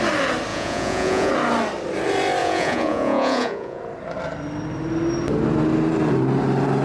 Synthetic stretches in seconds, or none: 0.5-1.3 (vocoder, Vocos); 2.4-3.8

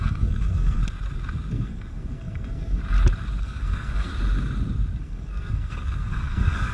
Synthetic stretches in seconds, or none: 0.0-0.8 (codec, SNAC); 1.5-2.8; 3.4-4.1; 5.0-6.7

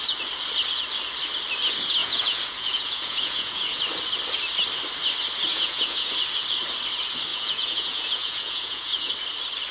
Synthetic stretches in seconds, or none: 2.0-3.8 (vocoder, Vocos); 5.5-6.1; 7.3-9.1

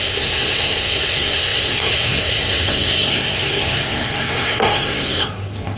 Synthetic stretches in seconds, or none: 0.0-5.8 (codec, SNAC)

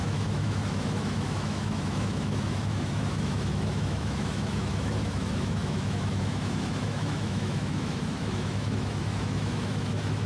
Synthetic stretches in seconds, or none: 0.0-10.3 (autoencoder, DAC-VAE)

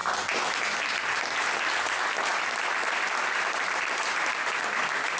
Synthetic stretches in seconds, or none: 2.3-4.6 (vocoder, BigVGAN v2)

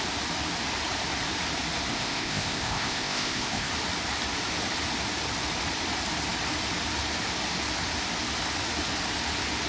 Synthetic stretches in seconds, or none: 1.9-3.7 (codec, ZipCodec)